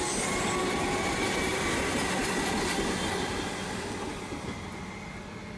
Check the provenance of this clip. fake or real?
real